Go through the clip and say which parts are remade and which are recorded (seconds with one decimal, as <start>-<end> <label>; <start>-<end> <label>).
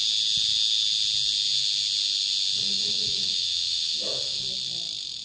0.0-2.6 recorded; 2.6-4.4 remade; 4.4-5.2 recorded